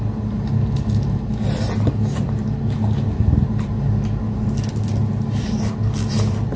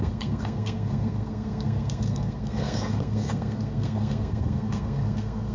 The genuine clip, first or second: first